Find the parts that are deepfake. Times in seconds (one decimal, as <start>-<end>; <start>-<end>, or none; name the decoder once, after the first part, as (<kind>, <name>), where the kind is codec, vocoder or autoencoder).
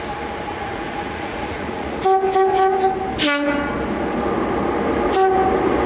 0.5-2.0 (vocoder, Vocos)